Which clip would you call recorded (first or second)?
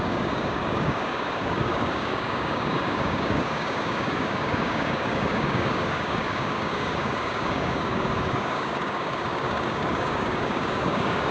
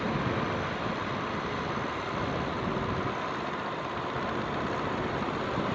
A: second